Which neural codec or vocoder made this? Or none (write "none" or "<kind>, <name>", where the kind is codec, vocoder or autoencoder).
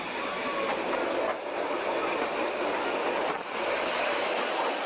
none